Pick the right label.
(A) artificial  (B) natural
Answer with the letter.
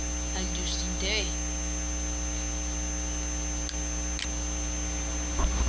B